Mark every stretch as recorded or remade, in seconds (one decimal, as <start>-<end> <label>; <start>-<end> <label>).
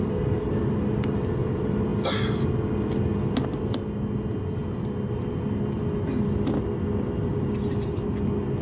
0.0-8.6 recorded